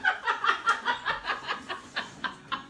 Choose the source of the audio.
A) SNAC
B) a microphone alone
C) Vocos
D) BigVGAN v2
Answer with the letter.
C